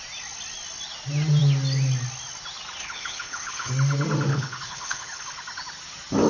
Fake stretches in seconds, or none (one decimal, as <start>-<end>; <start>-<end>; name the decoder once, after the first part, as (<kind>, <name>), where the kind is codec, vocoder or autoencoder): 2.8-3.7 (codec, HILCodec); 4.3-5.2